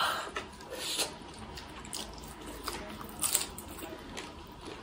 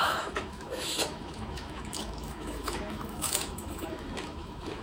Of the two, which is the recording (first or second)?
first